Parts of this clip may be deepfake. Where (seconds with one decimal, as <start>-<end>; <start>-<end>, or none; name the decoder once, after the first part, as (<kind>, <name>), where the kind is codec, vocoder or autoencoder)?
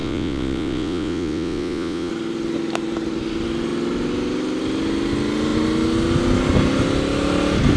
0.0-2.1 (vocoder, Vocos)